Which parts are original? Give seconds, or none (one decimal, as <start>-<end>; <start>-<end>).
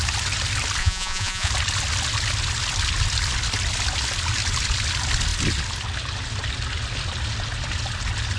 0.0-0.8; 1.5-8.4